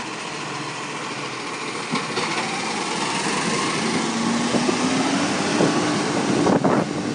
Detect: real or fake real